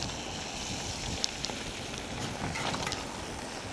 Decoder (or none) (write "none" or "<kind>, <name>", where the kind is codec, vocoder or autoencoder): none